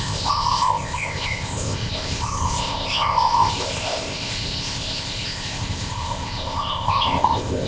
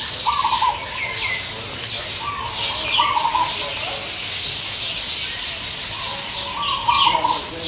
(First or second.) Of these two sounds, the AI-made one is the first